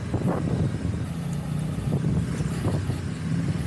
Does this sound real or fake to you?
real